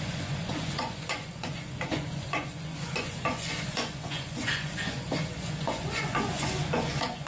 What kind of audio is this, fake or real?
fake